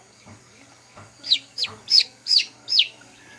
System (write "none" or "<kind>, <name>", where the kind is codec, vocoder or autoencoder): codec, DAC